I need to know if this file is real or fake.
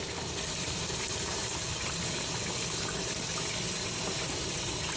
real